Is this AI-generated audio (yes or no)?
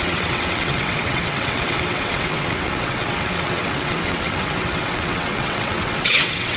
yes